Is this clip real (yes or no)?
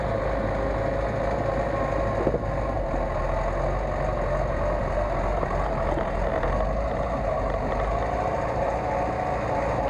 yes